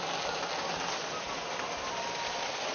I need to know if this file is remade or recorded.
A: recorded